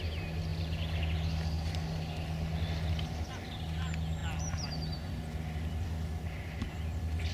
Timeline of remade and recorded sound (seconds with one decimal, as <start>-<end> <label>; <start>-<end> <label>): 0.0-4.2 recorded; 4.2-7.3 remade